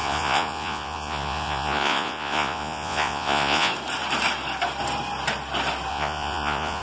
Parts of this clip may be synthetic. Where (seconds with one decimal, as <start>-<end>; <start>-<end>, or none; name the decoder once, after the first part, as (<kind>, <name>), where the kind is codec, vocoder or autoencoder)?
0.0-3.7 (vocoder, Vocos); 5.9-6.8